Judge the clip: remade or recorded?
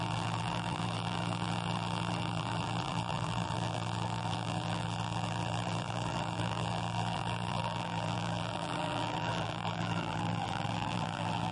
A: remade